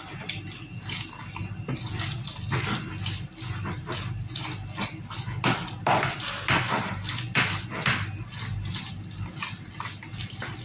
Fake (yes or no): no